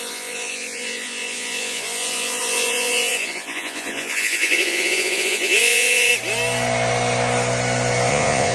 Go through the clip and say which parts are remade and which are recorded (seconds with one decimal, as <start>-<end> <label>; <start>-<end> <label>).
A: 0.0-6.1 remade; 6.1-8.1 recorded; 8.1-8.5 remade